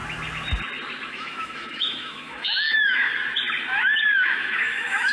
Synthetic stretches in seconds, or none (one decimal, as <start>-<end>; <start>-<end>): 1.1-3.1; 4.0-5.1